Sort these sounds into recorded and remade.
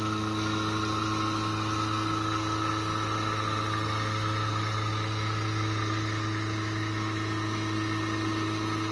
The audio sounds recorded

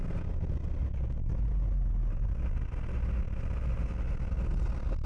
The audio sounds recorded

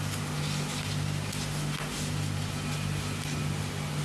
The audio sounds recorded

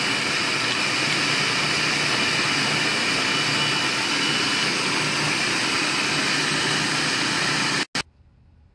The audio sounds recorded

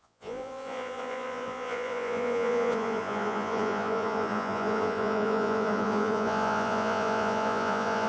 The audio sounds remade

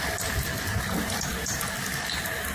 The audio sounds recorded